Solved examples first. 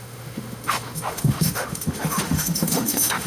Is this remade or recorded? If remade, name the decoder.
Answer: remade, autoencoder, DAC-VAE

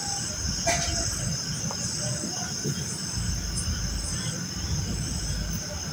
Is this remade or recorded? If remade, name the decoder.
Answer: recorded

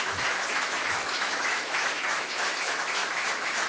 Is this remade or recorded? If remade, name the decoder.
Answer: remade, autoencoder, DAC-VAE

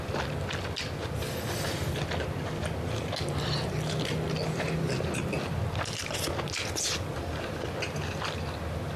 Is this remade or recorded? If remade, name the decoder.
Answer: recorded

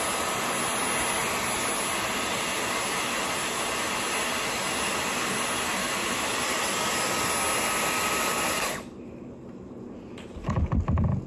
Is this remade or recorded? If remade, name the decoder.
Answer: recorded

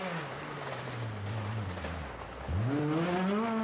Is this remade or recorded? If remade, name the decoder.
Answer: recorded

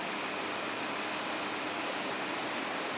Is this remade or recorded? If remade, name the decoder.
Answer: recorded